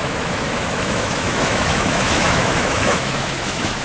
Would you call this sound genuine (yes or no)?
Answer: no